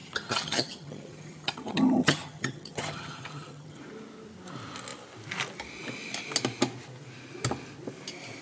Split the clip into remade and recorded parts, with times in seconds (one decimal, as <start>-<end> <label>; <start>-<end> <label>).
0.0-3.8 remade; 3.8-8.4 recorded